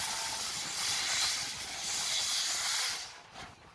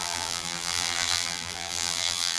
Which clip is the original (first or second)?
first